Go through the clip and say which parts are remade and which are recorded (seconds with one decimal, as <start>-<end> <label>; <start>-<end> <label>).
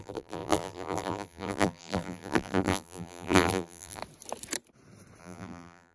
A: 0.0-4.0 remade; 4.0-5.2 recorded; 5.2-5.9 remade